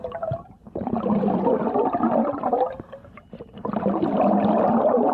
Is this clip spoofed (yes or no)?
yes